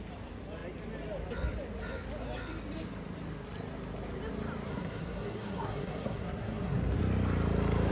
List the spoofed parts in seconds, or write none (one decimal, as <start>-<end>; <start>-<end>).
4.7-7.0